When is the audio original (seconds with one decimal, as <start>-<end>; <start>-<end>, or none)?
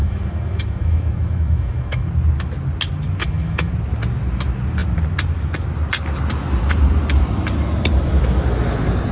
2.1-3.2; 3.7-9.1